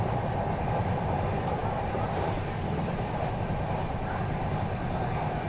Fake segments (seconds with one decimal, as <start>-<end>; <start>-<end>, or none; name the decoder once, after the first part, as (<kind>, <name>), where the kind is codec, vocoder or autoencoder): none